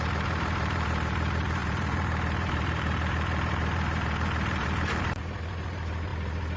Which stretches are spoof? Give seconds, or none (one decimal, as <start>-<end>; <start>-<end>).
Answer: 0.0-6.6